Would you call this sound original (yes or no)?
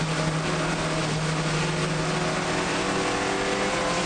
yes